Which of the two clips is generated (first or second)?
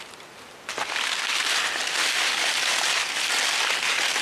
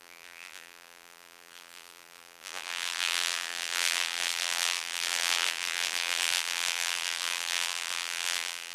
second